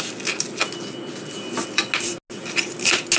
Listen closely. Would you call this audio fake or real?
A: real